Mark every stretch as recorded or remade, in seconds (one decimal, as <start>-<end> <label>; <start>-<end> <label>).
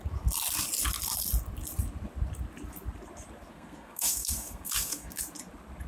0.0-3.5 recorded; 3.5-5.2 remade; 5.2-5.9 recorded